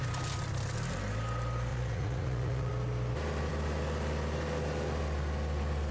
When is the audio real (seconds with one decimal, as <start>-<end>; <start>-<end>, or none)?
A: 0.0-1.7; 2.7-5.9